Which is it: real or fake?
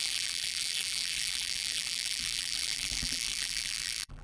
fake